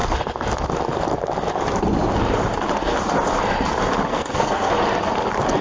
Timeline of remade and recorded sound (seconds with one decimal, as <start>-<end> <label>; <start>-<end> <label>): 0.0-4.1 recorded; 4.1-4.7 remade; 4.7-5.6 recorded